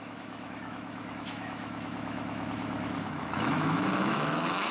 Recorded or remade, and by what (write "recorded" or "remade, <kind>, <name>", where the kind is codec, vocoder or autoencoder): remade, autoencoder, DAC-VAE